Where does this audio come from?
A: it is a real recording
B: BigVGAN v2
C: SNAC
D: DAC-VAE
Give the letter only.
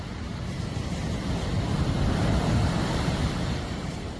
B